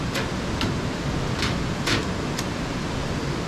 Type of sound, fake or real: real